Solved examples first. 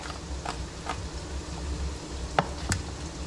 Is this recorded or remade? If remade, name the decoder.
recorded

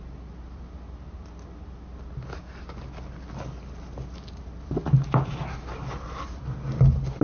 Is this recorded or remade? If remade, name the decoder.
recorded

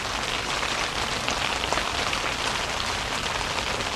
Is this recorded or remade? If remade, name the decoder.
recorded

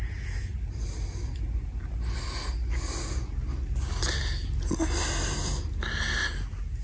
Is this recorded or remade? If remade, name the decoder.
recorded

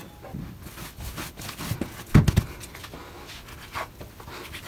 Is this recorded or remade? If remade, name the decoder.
recorded